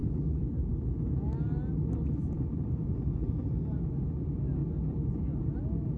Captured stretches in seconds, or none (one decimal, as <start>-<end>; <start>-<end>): 0.0-2.2; 3.8-6.0